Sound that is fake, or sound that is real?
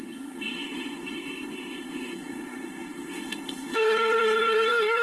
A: fake